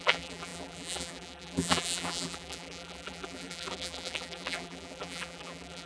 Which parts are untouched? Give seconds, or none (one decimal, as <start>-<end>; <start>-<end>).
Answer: none